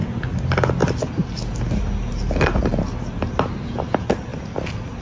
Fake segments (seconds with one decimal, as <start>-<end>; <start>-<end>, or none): none